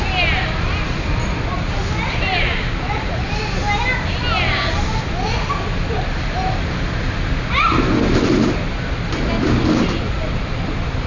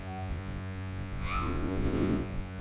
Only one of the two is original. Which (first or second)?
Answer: first